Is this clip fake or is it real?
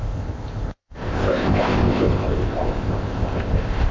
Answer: fake